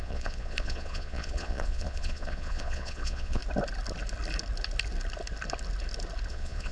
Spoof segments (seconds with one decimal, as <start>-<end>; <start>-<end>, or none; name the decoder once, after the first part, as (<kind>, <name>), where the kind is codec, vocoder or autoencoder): 0.0-3.4 (vocoder, Vocos); 6.3-6.7